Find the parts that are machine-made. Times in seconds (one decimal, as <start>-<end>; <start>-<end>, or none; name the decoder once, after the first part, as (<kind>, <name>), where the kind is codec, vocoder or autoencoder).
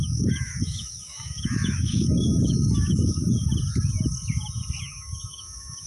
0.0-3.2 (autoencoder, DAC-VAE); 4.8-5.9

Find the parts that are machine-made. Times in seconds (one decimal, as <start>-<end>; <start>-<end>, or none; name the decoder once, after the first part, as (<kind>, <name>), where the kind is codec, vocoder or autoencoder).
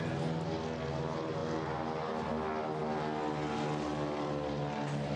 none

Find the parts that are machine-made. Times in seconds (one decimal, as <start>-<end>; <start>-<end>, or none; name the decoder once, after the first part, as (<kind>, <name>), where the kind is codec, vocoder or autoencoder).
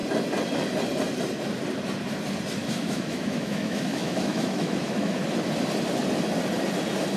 2.6-5.2 (autoencoder, DAC-VAE)